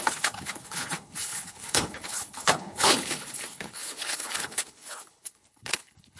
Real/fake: fake